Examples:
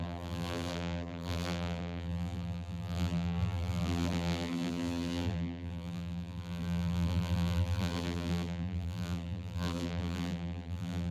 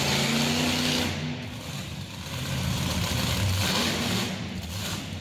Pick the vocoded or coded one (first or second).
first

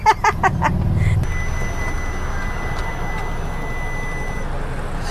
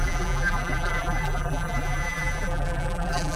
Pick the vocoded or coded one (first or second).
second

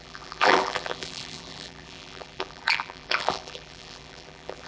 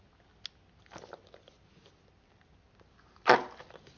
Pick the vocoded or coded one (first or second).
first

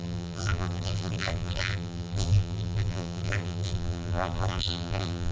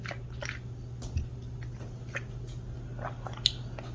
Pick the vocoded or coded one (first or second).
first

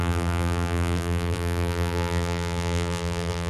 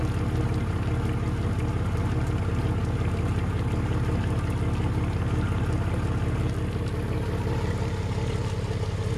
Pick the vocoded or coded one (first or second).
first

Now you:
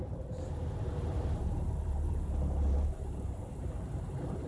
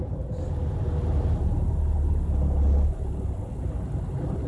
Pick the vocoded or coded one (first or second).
first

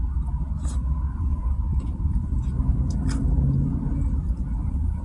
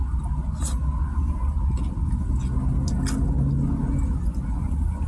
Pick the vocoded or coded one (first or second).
first